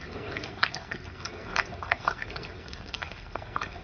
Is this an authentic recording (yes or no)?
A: no